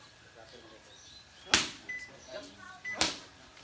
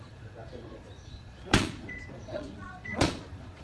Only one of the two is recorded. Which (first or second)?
first